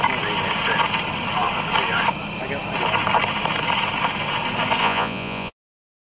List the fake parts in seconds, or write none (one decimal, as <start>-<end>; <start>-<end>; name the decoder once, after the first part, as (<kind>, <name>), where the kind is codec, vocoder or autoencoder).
4.8-5.5 (vocoder, Vocos)